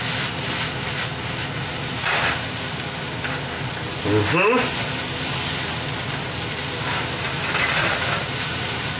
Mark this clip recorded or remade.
recorded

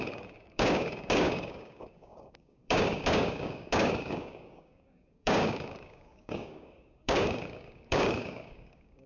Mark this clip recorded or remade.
remade